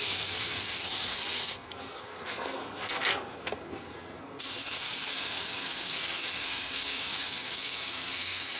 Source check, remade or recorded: remade